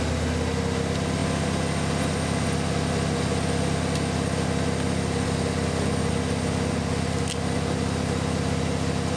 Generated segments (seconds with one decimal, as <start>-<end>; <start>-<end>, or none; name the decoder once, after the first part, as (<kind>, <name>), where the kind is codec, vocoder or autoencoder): none